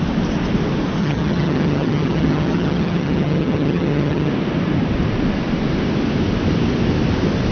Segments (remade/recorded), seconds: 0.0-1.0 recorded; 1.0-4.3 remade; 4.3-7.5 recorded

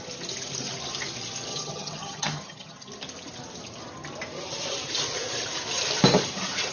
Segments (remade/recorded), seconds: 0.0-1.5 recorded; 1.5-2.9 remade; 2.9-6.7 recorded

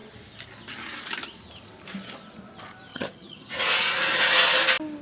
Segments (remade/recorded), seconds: 0.0-2.9 recorded; 2.9-3.5 remade; 3.5-5.0 recorded

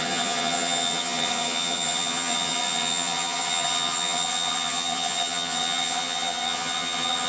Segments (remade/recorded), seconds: 0.0-7.3 remade

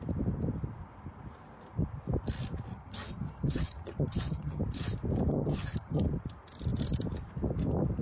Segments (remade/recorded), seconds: 0.0-2.7 recorded; 2.7-4.6 remade; 4.6-5.3 recorded; 5.3-6.0 remade; 6.0-8.0 recorded

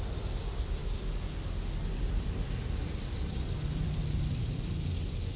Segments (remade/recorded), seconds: 0.0-5.4 recorded

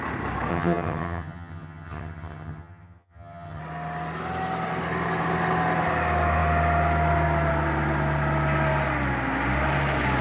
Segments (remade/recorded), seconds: 0.0-0.5 recorded; 0.5-3.6 remade; 3.6-10.2 recorded

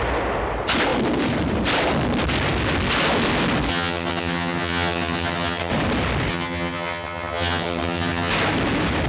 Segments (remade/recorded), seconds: 0.0-3.7 recorded; 3.7-5.7 remade; 5.7-6.3 recorded; 6.3-8.3 remade; 8.3-9.1 recorded